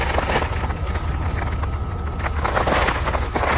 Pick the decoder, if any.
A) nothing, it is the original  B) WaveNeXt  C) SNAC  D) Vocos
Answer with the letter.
A